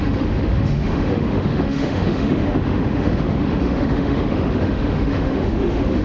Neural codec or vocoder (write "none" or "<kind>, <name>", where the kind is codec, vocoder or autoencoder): autoencoder, DAC-VAE